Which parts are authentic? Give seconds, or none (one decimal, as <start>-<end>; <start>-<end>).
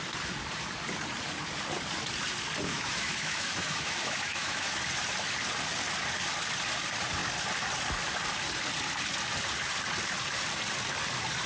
0.0-2.7; 4.8-11.5